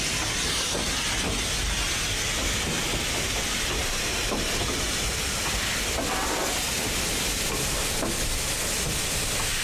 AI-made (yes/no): no